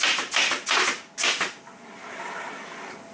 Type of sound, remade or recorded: recorded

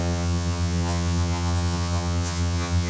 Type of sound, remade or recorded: remade